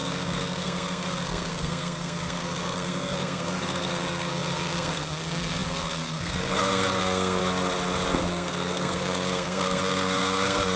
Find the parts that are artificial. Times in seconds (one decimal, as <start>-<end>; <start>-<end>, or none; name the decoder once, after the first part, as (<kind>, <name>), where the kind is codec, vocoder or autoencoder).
0.0-7.4 (codec, SNAC); 8.2-10.8